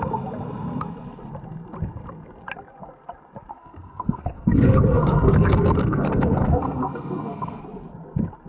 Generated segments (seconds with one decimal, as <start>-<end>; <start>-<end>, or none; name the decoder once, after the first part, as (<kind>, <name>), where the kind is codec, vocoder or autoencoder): 3.5-7.6 (codec, SNAC)